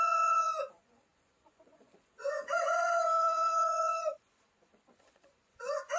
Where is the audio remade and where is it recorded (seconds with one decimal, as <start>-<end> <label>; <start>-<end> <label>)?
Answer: 0.0-6.0 remade